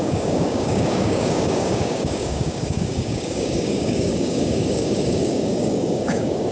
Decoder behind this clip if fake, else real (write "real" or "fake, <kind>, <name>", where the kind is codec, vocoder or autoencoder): fake, codec, DAC